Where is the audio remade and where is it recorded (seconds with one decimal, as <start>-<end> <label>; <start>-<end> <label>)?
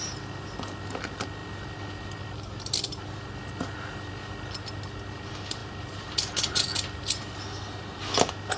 0.0-8.6 recorded